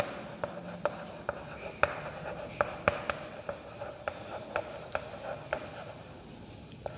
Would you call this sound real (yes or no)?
yes